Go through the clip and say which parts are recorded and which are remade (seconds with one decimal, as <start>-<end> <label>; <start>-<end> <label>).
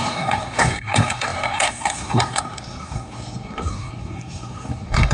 0.0-5.1 remade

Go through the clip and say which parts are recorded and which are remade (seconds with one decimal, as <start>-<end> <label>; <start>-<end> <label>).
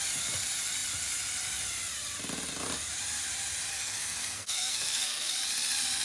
0.0-3.7 recorded; 3.7-5.3 remade; 5.3-6.0 recorded